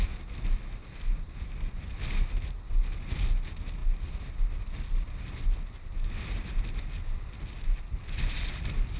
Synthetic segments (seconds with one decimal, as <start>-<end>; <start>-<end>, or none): none